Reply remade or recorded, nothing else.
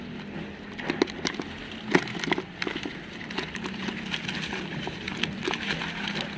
recorded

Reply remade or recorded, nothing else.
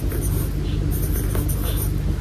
recorded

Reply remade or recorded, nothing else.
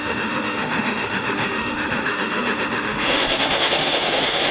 remade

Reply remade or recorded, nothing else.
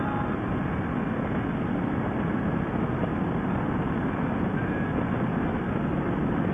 recorded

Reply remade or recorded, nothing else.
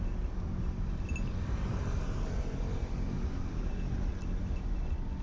recorded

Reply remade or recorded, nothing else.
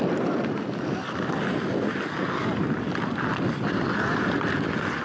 recorded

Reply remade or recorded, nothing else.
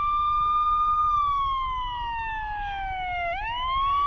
remade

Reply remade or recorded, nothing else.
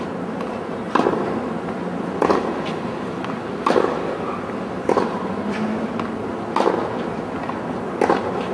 recorded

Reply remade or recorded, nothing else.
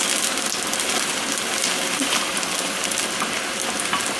recorded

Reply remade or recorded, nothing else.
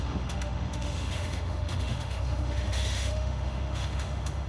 remade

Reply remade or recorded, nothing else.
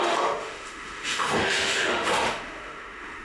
remade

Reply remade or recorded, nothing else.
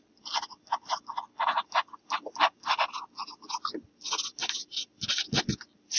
recorded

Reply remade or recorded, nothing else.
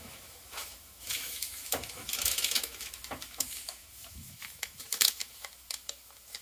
remade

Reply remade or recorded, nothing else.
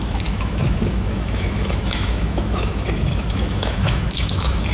remade